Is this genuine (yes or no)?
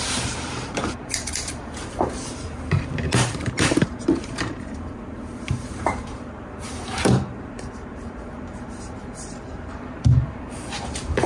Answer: no